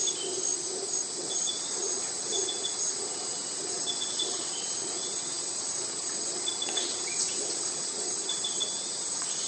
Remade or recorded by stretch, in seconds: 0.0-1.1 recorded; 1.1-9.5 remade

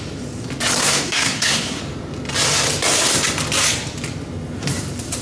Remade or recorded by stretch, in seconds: 0.0-0.8 recorded; 0.8-1.8 remade; 1.8-5.2 recorded

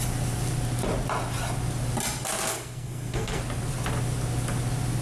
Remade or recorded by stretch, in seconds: 0.0-2.5 recorded; 2.5-3.4 remade; 3.4-5.0 recorded

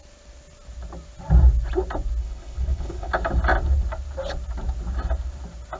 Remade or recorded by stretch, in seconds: 0.0-2.2 recorded; 2.2-3.1 remade; 3.1-5.8 recorded

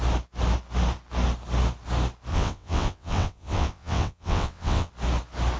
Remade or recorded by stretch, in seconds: 0.0-2.3 recorded; 2.3-4.9 remade; 4.9-5.6 recorded

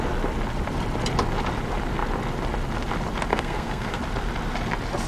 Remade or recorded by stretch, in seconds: 0.0-3.3 recorded; 3.3-4.0 remade; 4.0-5.1 recorded

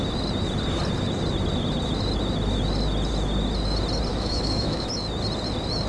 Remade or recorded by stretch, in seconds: 0.0-4.1 recorded; 4.1-4.9 remade; 4.9-5.9 recorded